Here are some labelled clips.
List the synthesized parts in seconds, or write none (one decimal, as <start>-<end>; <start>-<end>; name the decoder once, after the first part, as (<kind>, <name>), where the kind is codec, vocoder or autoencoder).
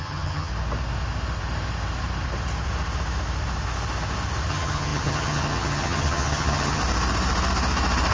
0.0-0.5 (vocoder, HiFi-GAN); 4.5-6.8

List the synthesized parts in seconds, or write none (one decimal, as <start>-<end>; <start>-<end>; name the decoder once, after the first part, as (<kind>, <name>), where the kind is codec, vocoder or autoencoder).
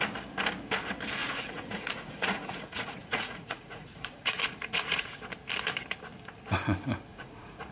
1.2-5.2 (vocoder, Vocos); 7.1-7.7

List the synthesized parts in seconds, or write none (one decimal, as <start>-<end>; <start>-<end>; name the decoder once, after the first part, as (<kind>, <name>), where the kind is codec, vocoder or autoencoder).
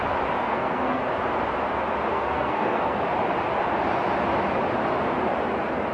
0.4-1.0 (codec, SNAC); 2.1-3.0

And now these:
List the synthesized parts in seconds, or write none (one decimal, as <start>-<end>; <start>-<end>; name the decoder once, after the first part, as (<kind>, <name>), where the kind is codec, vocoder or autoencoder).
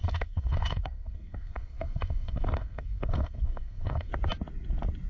0.0-4.1 (codec, SNAC)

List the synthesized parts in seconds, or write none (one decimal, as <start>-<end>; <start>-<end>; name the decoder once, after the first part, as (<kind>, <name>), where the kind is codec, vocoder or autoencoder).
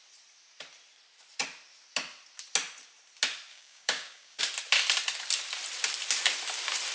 3.5-4.4 (codec, DAC)